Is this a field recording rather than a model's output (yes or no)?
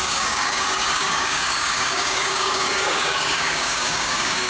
no